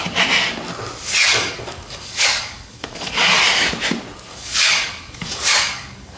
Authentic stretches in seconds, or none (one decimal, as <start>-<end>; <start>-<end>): 0.0-1.3; 3.4-4.3

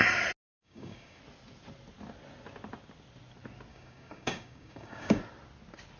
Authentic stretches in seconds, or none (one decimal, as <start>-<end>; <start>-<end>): 0.0-0.5; 1.2-3.7; 5.2-6.0

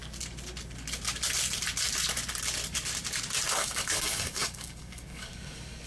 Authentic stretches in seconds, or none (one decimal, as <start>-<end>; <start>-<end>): 0.0-3.5

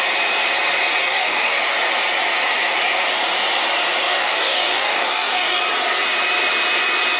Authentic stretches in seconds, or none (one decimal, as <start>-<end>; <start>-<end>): 0.0-1.0; 1.6-4.0; 5.6-7.2

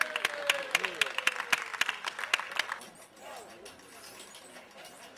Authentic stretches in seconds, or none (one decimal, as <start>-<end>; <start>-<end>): 0.0-5.2

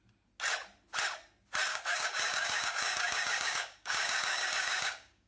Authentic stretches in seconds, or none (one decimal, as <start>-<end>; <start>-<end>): 0.0-1.7

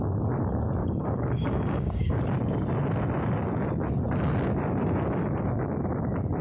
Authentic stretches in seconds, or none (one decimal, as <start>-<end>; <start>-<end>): 0.0-0.8; 2.2-6.4